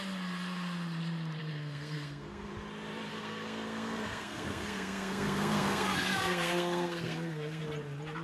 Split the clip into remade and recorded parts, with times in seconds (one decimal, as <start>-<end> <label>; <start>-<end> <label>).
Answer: 0.0-1.4 recorded; 1.4-2.5 remade; 2.5-3.1 recorded; 3.1-7.6 remade; 7.6-8.2 recorded